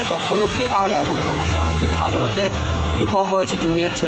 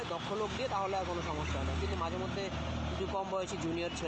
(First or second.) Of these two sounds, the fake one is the first